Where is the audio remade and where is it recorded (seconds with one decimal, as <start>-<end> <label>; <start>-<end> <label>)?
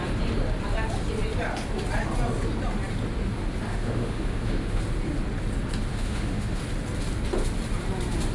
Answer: 0.0-3.7 recorded; 3.7-4.8 remade; 4.8-5.9 recorded; 5.9-6.6 remade; 6.6-8.3 recorded